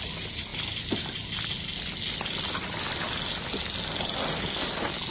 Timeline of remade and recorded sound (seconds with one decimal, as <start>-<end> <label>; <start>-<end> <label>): 0.0-5.1 recorded